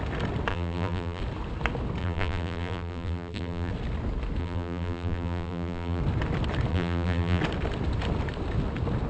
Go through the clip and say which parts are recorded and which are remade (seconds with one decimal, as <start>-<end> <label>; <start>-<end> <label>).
0.0-0.5 recorded; 0.5-1.2 remade; 1.2-2.0 recorded; 2.0-3.7 remade; 3.7-4.4 recorded; 4.4-6.0 remade; 6.0-6.7 recorded; 6.7-7.4 remade; 7.4-9.1 recorded